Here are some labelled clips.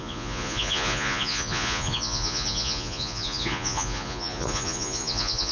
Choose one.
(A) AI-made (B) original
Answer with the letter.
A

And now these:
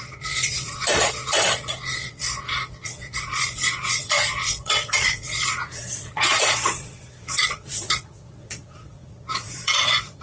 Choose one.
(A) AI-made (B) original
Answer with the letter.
A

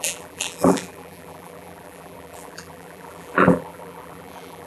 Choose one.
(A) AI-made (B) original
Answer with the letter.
A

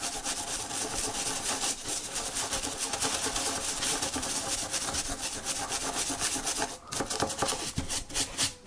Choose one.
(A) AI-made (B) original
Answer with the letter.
A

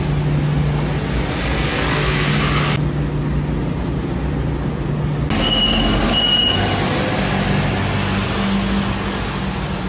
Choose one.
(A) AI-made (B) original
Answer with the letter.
B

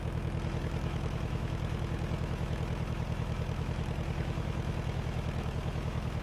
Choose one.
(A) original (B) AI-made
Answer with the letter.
B